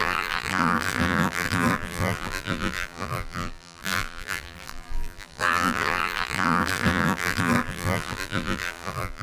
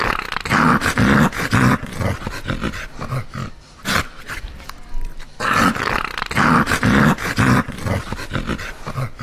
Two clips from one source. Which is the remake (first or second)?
first